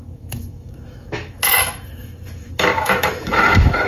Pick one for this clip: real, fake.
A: fake